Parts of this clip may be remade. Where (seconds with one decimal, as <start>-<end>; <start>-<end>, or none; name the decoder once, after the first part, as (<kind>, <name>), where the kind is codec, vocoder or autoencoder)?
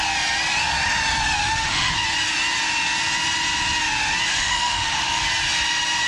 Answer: 1.4-1.9 (autoencoder, DAC-VAE); 4.3-5.2